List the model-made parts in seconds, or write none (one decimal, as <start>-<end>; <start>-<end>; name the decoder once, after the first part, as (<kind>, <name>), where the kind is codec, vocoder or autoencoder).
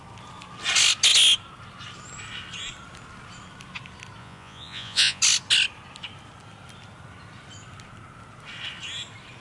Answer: 4.2-5.2 (vocoder, Vocos)